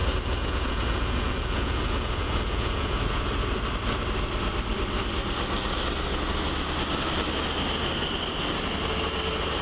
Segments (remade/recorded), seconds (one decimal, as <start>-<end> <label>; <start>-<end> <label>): 0.0-3.3 remade; 3.3-9.6 recorded